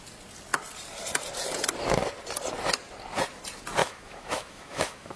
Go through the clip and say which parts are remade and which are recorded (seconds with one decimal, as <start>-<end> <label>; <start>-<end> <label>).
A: 0.0-3.8 recorded; 3.8-5.2 remade

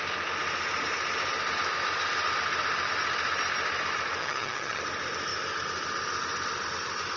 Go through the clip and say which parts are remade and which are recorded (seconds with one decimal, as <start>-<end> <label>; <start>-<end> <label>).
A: 0.0-4.2 recorded; 4.2-4.8 remade; 4.8-7.2 recorded